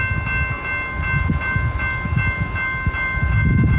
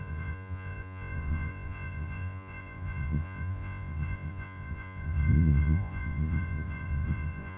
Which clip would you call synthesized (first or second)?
second